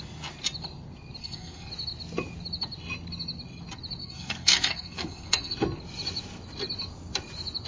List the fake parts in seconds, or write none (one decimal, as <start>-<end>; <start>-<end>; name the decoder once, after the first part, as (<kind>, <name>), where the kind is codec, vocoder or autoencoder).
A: 1.2-1.7 (codec, SNAC); 4.0-5.5